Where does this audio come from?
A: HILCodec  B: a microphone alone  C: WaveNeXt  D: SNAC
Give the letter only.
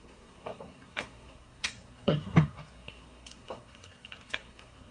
D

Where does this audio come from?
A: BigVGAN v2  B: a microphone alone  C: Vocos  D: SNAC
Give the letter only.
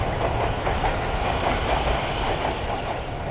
B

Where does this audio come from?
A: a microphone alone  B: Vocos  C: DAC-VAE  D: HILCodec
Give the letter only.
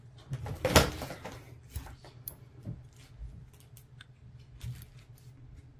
A